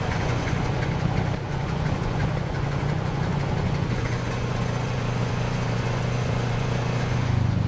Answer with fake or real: fake